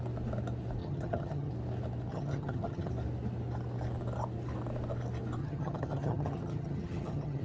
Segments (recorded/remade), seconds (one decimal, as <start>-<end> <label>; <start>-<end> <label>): 0.0-0.8 recorded; 0.8-1.5 remade; 1.5-2.1 recorded; 2.1-2.9 remade; 2.9-5.4 recorded; 5.4-7.4 remade